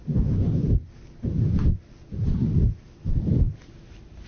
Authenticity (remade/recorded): recorded